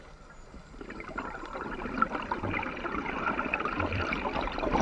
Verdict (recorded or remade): remade